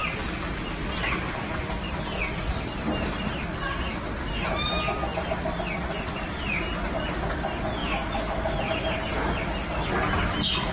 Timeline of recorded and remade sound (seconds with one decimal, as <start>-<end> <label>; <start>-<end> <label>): 0.0-7.8 recorded; 7.8-8.6 remade; 8.6-10.7 recorded